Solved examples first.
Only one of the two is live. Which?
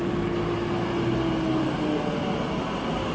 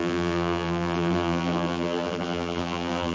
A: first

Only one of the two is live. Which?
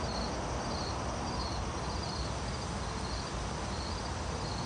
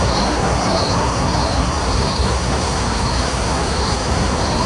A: first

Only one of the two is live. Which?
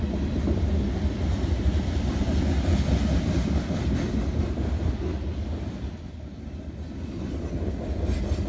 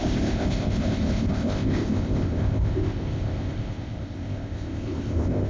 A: first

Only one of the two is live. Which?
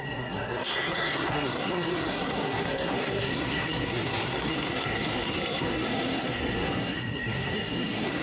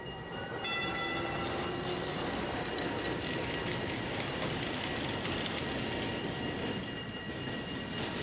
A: second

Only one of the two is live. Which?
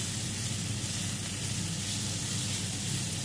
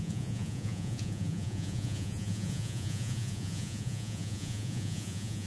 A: first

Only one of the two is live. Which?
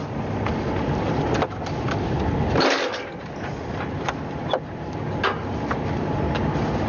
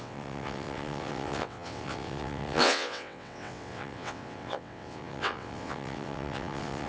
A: first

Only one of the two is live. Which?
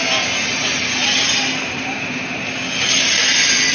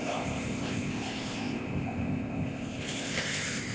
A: first